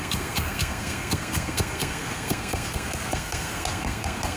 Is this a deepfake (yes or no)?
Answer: yes